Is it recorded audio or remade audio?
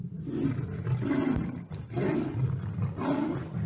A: recorded